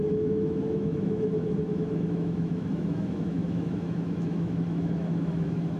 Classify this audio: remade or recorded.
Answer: remade